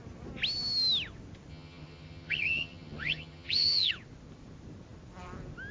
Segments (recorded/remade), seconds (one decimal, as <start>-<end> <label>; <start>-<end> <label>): 0.0-1.5 recorded; 1.5-3.9 remade; 3.9-5.7 recorded